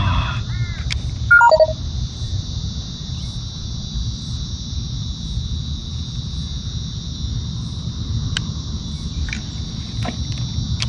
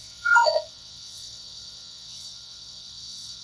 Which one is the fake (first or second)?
second